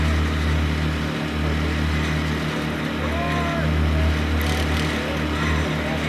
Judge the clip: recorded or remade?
recorded